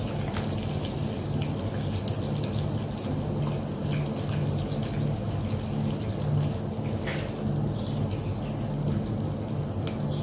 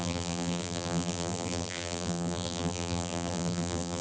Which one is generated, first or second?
second